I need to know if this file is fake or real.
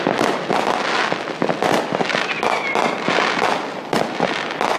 real